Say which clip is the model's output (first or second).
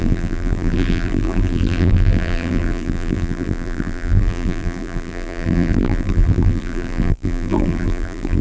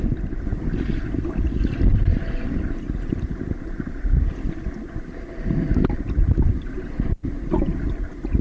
first